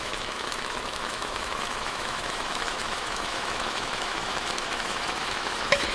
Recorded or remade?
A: remade